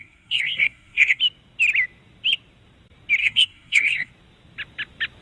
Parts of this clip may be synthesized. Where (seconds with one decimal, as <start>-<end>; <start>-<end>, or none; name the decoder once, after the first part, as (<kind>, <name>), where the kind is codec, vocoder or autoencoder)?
0.0-1.2 (codec, SNAC); 3.2-4.1